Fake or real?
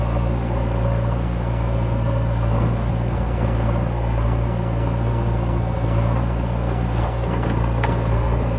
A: fake